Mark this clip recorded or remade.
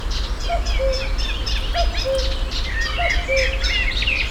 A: recorded